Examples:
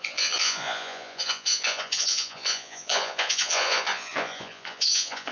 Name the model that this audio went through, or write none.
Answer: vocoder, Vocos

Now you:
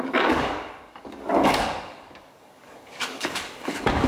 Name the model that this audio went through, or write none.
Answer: codec, DAC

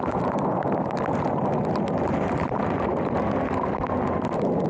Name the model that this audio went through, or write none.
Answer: none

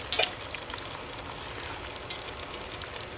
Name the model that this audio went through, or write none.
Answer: none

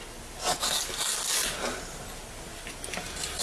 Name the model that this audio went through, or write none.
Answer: none